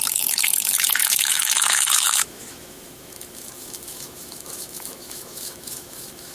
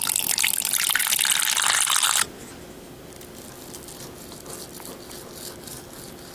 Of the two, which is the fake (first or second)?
first